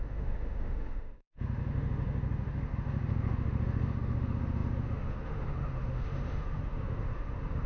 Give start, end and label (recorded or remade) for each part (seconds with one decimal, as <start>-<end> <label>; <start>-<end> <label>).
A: 0.0-7.7 remade